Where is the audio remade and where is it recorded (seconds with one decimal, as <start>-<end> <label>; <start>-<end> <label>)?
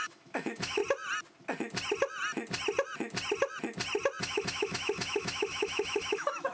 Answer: 0.0-0.8 remade; 0.8-4.2 recorded; 4.2-6.5 remade